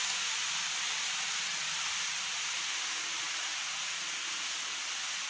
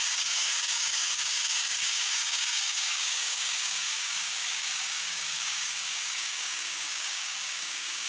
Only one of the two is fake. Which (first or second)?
second